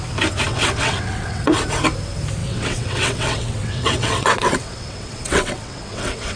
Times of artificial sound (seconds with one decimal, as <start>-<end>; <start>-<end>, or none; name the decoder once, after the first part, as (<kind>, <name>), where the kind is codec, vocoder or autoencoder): 0.5-1.6 (vocoder, WaveNeXt); 2.4-6.4